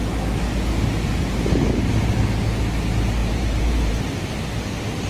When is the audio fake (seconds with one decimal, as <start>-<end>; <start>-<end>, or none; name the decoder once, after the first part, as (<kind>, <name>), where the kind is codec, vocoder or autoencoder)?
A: 3.2-4.2 (vocoder, BigVGAN v2)